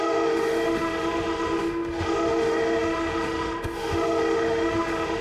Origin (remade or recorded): remade